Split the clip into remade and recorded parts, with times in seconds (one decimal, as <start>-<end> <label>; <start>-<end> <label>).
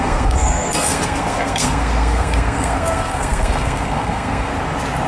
0.0-4.5 remade; 4.5-5.1 recorded